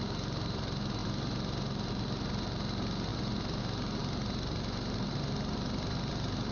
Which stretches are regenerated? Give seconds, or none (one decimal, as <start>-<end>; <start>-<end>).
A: none